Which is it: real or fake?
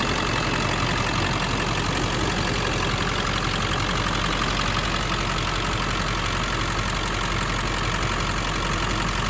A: real